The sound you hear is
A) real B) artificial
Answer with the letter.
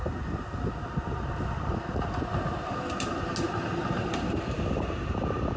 A